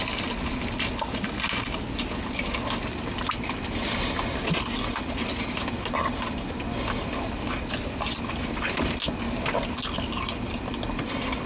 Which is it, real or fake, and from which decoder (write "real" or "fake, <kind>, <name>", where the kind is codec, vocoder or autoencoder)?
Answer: real